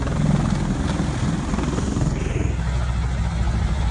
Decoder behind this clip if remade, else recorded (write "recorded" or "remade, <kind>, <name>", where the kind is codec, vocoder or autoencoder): recorded